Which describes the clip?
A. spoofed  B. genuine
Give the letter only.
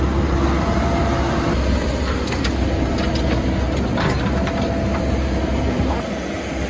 B